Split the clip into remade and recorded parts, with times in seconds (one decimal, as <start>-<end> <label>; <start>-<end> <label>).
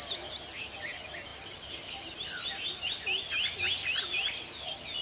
0.0-1.3 recorded; 1.3-4.3 remade; 4.3-5.0 recorded